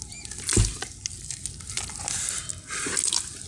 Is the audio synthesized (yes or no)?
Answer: no